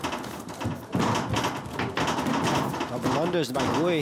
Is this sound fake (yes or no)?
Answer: no